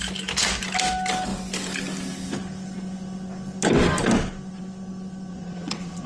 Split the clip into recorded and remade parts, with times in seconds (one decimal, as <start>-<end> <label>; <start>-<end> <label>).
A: 0.0-5.3 recorded; 5.3-6.1 remade